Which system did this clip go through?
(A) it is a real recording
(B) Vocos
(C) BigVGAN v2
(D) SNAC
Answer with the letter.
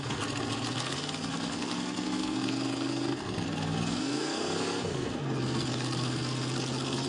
D